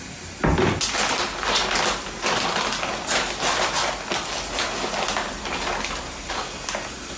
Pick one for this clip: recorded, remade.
recorded